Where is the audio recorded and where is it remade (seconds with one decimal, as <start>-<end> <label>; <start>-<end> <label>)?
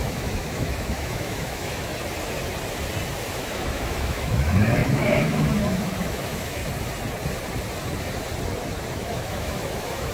0.0-1.9 remade; 1.9-3.3 recorded; 3.3-6.6 remade; 6.6-8.9 recorded; 8.9-10.1 remade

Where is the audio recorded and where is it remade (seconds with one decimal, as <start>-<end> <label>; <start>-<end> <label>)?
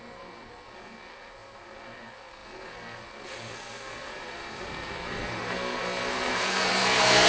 0.0-7.3 remade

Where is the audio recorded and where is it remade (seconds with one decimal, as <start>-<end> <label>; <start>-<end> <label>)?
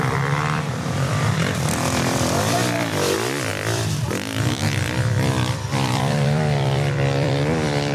0.0-7.9 remade